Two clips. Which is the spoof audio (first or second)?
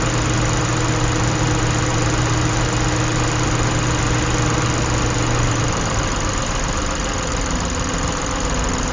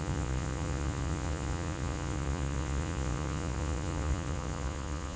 second